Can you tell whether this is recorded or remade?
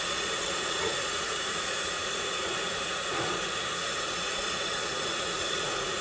remade